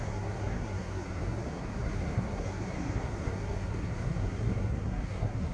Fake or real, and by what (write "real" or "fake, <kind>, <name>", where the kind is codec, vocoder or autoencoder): fake, codec, SNAC